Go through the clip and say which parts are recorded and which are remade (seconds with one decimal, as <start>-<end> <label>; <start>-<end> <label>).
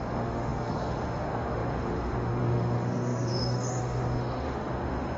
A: 0.0-5.2 remade